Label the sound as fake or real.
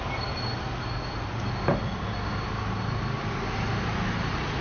real